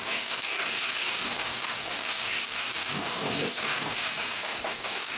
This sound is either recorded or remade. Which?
remade